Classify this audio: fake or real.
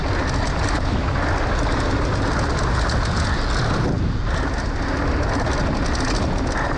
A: real